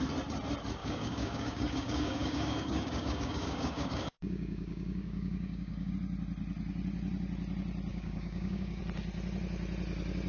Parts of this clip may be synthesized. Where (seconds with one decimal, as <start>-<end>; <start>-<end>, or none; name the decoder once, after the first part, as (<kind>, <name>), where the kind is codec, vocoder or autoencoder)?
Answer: 0.8-5.9 (codec, DAC); 7.9-8.8